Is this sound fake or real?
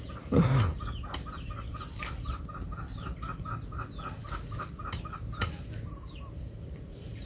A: real